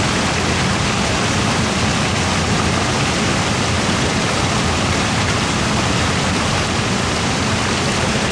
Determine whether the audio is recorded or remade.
recorded